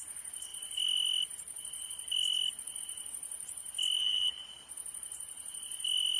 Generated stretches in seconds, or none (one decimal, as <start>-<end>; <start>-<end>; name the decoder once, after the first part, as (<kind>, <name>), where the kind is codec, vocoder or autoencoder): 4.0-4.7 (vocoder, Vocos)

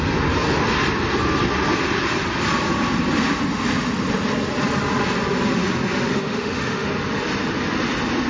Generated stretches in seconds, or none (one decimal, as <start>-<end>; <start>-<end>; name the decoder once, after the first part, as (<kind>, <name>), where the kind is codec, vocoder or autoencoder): 6.1-6.9 (autoencoder, DAC-VAE)

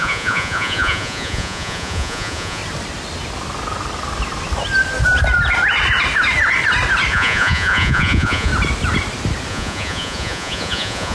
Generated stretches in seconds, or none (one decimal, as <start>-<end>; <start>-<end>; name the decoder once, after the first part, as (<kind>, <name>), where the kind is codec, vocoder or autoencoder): 0.0-2.6 (vocoder, Vocos); 7.1-8.5; 9.5-11.1

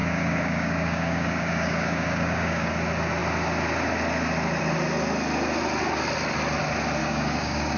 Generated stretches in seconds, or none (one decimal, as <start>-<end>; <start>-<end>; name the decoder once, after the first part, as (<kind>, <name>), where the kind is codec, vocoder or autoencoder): 0.0-2.7 (codec, DAC); 7.0-7.8